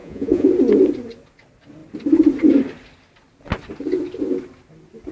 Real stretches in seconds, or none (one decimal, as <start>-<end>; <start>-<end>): 0.5-5.1